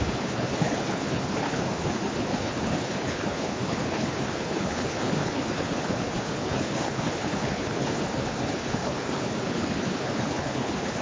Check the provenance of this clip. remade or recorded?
remade